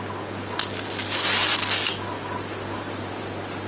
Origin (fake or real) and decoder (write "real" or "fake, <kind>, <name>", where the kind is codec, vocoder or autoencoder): real